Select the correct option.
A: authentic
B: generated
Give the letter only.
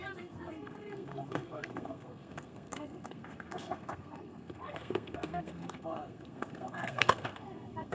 B